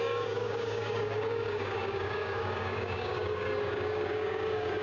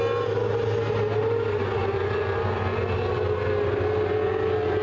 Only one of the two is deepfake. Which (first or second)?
first